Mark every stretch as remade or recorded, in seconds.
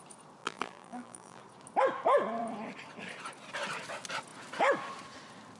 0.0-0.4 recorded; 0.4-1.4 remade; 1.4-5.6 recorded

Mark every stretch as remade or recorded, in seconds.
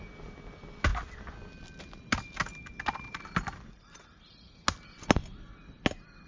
0.0-6.3 recorded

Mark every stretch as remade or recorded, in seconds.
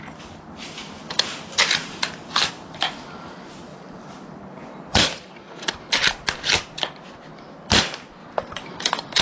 0.0-1.3 recorded; 1.3-2.9 remade; 2.9-3.7 recorded; 3.7-5.9 remade; 5.9-8.2 recorded; 8.2-9.2 remade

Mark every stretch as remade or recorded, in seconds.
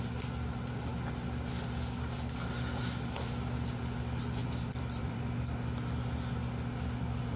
0.0-4.4 recorded; 4.4-5.2 remade; 5.2-7.4 recorded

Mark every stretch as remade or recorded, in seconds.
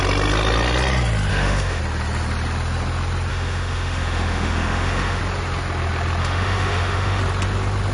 0.0-1.3 recorded; 1.3-1.8 remade; 1.8-3.3 recorded; 3.3-5.2 remade; 5.2-6.2 recorded; 6.2-7.2 remade; 7.2-7.9 recorded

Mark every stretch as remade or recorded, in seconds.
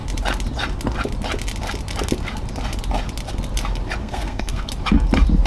0.0-4.0 recorded; 4.0-4.7 remade; 4.7-5.5 recorded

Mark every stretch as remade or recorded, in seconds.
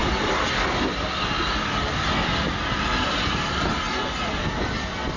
0.0-5.2 recorded